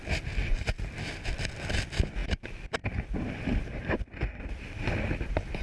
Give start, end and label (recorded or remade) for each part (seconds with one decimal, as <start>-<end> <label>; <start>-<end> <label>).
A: 0.0-5.6 recorded